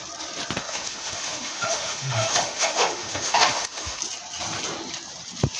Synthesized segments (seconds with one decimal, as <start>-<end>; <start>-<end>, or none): 0.6-4.0